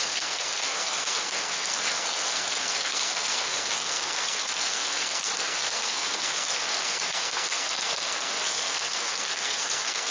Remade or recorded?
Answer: remade